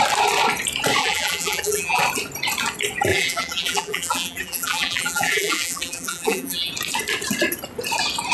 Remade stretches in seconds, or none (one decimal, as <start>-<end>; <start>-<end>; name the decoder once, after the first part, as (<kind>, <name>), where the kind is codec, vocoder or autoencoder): 1.0-2.0 (vocoder, BigVGAN v2); 3.1-6.7